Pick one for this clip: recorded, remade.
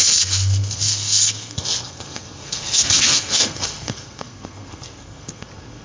remade